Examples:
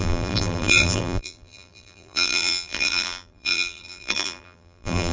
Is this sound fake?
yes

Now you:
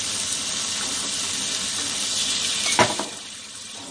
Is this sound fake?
yes